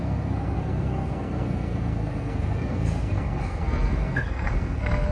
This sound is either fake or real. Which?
fake